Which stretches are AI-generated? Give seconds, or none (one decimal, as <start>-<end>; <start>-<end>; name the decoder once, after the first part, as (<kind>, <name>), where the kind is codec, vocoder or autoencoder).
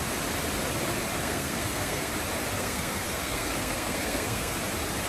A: 1.2-2.1 (codec, SNAC); 2.6-4.6